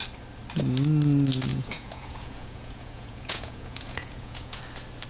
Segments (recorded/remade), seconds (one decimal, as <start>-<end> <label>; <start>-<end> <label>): 0.0-1.5 recorded; 1.5-4.6 remade; 4.6-5.1 recorded